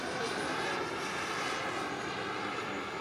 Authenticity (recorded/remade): recorded